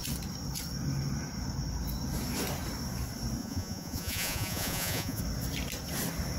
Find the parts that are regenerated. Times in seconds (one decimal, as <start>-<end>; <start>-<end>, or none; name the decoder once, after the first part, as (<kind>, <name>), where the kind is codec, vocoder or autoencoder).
3.4-5.2 (vocoder, Vocos)